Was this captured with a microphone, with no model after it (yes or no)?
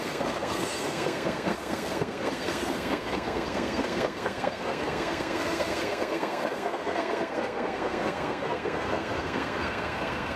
no